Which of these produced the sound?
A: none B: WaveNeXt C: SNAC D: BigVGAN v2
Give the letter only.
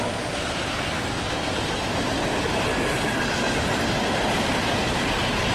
A